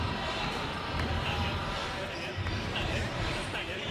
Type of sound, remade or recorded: remade